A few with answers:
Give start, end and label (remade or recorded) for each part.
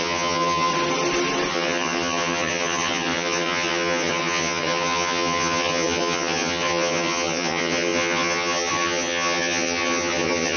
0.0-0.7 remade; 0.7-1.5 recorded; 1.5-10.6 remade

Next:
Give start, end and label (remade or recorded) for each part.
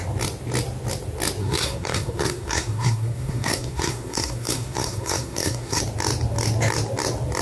0.0-1.4 recorded; 1.4-5.8 remade; 5.8-7.4 recorded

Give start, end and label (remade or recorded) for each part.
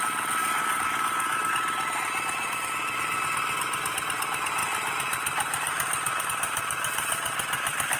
0.0-0.4 recorded; 0.4-1.5 remade; 1.5-8.0 recorded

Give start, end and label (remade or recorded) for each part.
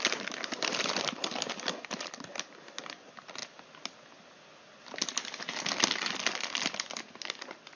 0.0-7.8 recorded